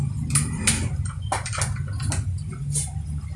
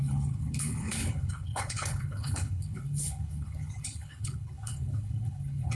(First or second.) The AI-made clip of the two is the second